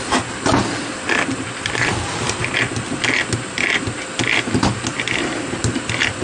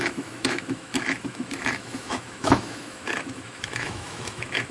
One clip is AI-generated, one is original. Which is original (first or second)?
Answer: first